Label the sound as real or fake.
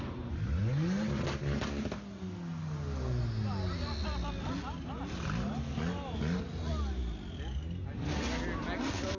real